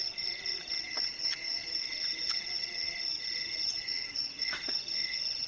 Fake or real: fake